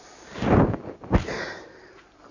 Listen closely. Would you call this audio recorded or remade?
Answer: recorded